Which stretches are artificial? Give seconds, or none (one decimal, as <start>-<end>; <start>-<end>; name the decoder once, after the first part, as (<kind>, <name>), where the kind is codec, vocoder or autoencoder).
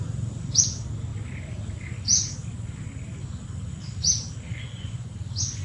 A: 4.5-5.1 (vocoder, Vocos)